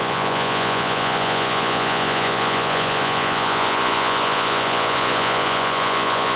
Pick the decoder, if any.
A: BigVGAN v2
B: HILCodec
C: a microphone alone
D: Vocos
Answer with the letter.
D